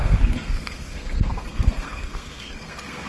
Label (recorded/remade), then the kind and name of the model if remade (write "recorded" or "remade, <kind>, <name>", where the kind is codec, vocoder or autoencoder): remade, codec, SNAC